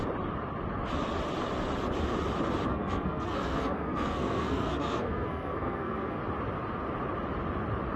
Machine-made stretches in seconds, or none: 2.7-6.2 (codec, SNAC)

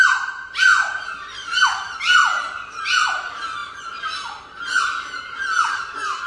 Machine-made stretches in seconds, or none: none